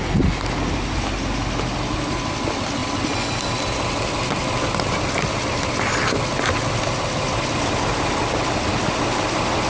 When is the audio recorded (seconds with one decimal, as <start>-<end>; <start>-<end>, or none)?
0.0-9.7